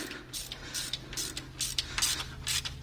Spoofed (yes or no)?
no